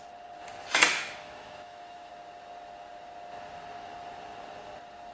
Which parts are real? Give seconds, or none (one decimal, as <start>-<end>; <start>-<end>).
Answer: 0.0-0.9; 2.1-5.1